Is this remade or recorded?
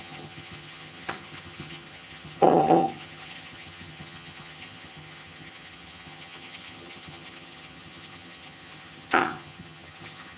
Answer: remade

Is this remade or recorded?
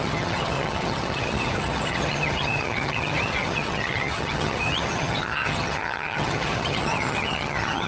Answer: remade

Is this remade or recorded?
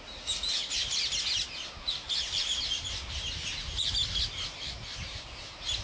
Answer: recorded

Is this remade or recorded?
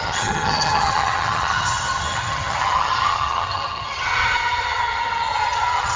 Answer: remade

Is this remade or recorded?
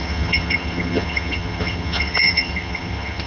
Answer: remade